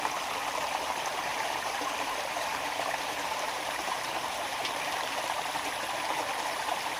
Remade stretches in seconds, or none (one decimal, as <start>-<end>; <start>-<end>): 1.3-5.2